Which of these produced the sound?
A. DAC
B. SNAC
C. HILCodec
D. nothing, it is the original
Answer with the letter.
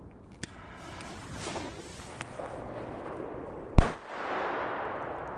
D